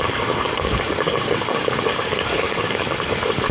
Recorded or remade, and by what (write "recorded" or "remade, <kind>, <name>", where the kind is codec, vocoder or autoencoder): remade, codec, DAC